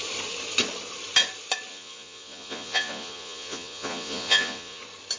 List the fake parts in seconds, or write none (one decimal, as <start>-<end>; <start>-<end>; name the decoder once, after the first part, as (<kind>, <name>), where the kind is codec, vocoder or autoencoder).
1.7-4.8 (vocoder, Vocos)

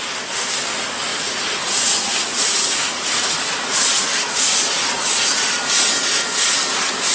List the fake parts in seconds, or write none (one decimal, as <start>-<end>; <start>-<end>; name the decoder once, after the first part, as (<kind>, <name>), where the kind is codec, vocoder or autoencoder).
1.1-4.1 (vocoder, Vocos); 4.8-5.5

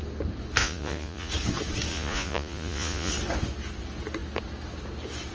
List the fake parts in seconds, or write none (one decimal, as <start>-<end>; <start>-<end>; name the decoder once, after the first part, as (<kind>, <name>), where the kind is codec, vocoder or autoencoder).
0.6-1.3 (vocoder, Vocos); 1.9-3.1

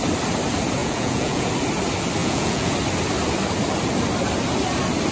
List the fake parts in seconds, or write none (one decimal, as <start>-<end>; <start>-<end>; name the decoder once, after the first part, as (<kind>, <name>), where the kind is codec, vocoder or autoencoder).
0.8-1.5 (vocoder, Vocos); 2.2-2.7